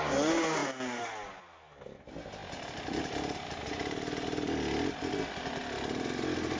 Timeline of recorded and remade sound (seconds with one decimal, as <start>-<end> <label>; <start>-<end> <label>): 0.0-6.6 recorded